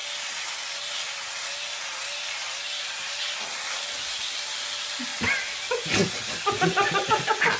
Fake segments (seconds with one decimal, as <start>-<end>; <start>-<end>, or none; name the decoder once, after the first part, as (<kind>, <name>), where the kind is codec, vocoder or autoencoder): none